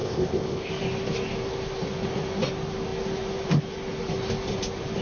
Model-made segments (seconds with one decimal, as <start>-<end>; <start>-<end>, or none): 0.0-0.7